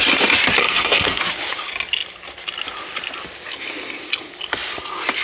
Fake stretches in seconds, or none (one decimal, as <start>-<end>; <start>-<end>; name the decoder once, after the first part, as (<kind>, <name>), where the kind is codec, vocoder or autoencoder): 0.6-1.2 (codec, SNAC)